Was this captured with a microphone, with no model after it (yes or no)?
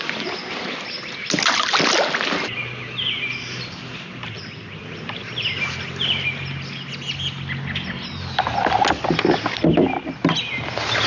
yes